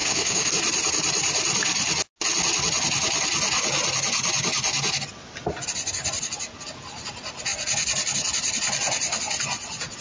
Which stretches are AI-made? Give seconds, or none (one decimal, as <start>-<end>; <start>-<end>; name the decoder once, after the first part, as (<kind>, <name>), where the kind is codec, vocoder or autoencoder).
0.0-0.5 (autoencoder, DAC-VAE)